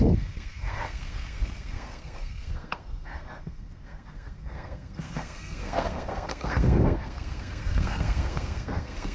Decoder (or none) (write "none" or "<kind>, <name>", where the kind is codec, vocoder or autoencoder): codec, SNAC